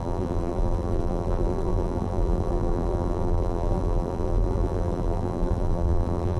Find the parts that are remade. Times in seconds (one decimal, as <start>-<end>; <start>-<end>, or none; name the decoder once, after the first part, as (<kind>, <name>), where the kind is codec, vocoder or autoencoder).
0.0-6.4 (vocoder, BigVGAN v2)